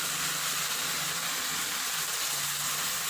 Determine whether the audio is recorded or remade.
recorded